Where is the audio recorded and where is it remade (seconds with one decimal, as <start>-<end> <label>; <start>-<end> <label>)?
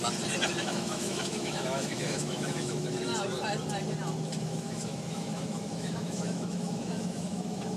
0.0-0.6 recorded; 0.6-3.1 remade; 3.1-4.4 recorded; 4.4-7.8 remade